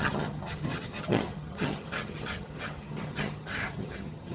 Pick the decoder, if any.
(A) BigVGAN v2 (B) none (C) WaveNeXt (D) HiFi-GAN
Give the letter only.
D